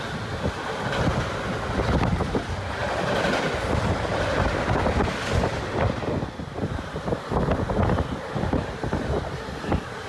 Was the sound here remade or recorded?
recorded